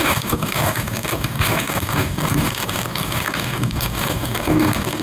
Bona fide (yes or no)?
no